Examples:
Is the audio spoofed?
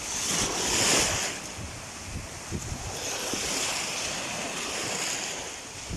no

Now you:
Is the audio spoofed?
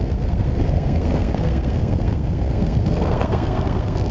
yes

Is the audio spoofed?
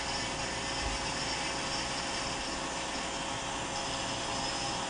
no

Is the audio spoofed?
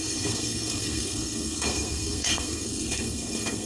yes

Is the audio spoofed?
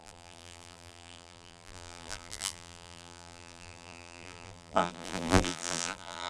yes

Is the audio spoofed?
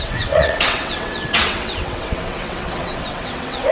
yes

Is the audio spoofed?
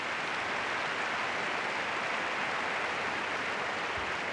no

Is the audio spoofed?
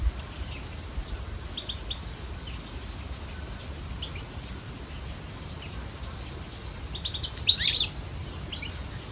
no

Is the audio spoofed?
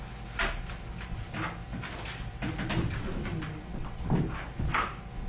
no